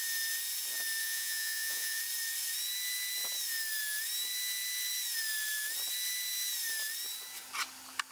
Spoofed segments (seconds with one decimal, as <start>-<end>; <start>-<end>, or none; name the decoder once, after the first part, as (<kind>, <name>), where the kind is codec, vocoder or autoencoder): 1.0-2.0 (vocoder, Vocos)